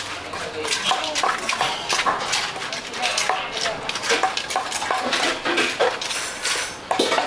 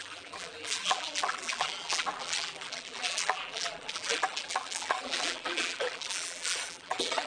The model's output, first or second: second